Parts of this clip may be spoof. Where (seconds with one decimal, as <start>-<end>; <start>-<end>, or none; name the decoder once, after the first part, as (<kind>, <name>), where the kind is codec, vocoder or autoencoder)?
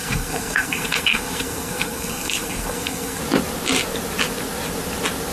0.0-3.2 (codec, SNAC)